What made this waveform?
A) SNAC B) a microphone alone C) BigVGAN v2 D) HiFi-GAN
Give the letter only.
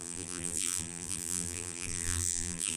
C